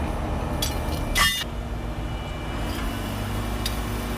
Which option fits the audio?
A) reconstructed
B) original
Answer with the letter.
B